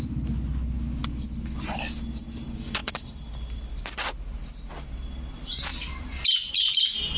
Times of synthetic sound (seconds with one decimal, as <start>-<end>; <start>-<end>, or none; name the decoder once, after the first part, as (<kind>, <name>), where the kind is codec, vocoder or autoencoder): 2.8-3.3 (vocoder, BigVGAN v2); 5.7-6.5